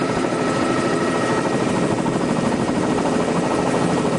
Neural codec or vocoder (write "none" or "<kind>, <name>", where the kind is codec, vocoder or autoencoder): vocoder, BigVGAN v2